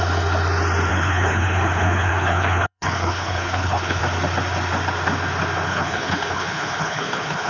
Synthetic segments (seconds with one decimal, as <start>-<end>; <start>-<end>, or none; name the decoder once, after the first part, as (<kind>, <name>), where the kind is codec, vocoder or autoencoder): 0.9-4.0 (codec, HILCodec); 5.7-7.5